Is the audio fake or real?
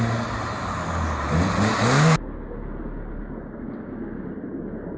real